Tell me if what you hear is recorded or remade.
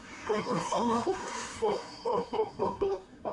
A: remade